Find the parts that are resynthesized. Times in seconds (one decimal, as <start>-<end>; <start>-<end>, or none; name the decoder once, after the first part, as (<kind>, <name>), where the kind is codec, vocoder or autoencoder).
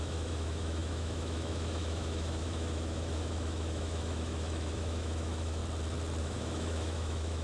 0.0-5.6 (autoencoder, DAC-VAE); 6.2-7.4